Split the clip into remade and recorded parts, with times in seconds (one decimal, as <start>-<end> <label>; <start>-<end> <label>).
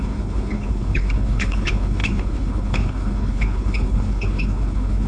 0.0-5.1 remade